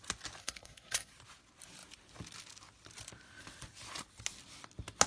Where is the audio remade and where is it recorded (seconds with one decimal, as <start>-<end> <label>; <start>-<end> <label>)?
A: 0.0-0.4 recorded; 0.4-1.1 remade; 1.1-5.1 recorded